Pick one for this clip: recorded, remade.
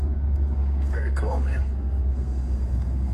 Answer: remade